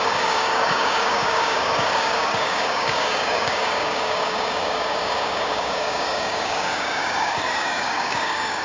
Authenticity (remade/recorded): remade